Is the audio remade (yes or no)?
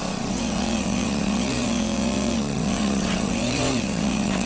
yes